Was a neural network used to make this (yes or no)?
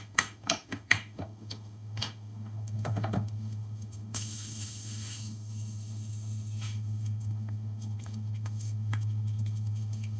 yes